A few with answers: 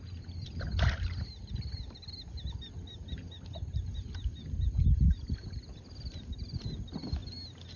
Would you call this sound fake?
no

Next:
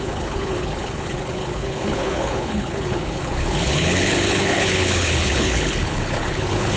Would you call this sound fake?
yes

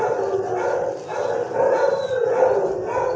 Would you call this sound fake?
no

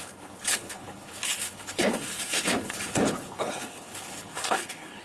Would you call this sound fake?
yes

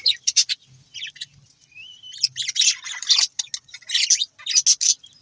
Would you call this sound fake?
no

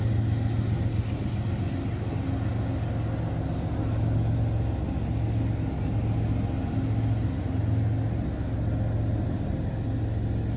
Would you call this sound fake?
no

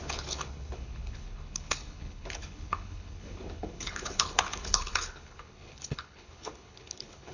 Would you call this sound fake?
yes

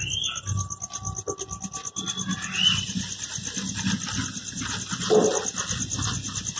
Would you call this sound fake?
no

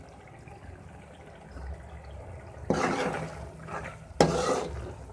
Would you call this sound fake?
no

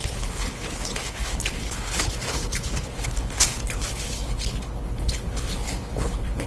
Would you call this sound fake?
yes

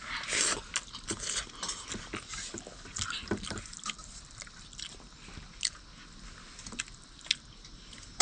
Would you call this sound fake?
no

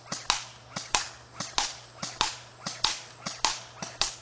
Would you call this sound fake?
no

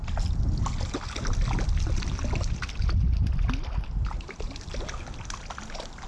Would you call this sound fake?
no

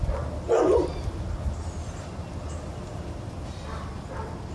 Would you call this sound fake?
no